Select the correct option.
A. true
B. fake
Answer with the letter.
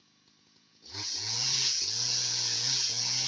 B